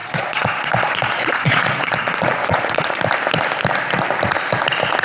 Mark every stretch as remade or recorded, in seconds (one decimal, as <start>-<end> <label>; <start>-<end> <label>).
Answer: 0.0-3.0 remade; 3.0-5.0 recorded